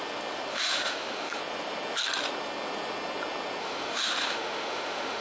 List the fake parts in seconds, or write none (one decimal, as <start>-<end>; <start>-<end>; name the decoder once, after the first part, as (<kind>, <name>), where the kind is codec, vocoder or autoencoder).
0.5-1.4 (autoencoder, DAC-VAE); 3.6-5.2